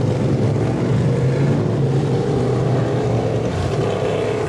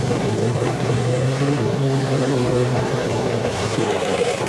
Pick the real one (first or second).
first